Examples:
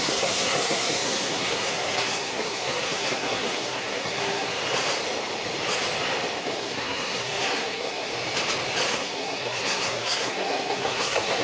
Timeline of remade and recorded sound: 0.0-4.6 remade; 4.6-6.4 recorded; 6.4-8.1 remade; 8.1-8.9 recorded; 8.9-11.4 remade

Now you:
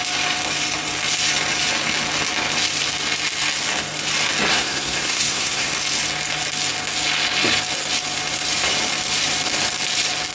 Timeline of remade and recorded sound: 0.0-4.5 recorded; 4.5-5.7 remade; 5.7-10.3 recorded

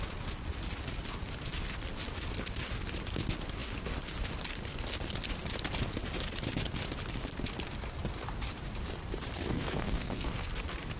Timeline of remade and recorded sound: 0.0-9.5 recorded; 9.5-10.5 remade; 10.5-11.0 recorded

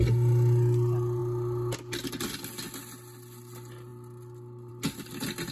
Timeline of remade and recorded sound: 0.0-5.5 recorded

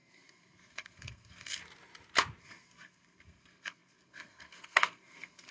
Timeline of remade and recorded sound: 0.0-1.6 remade; 1.6-2.4 recorded; 2.4-5.5 remade

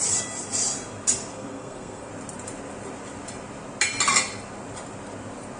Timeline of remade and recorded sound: 0.0-1.3 recorded; 1.3-2.1 remade; 2.1-5.6 recorded

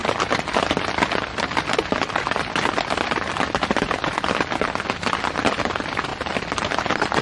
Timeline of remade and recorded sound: 0.0-7.2 recorded